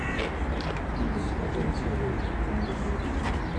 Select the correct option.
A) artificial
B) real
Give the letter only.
B